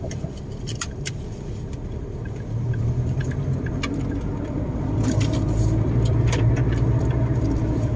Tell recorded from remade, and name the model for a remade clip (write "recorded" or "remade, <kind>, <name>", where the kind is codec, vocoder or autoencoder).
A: remade, vocoder, BigVGAN v2